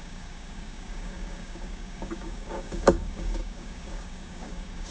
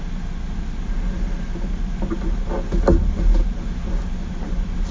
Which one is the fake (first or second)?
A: first